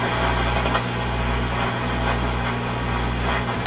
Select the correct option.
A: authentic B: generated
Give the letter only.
A